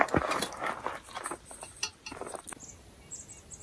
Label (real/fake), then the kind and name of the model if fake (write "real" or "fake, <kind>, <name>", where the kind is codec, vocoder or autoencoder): real